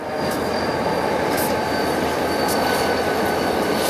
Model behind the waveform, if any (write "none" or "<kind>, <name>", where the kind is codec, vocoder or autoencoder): none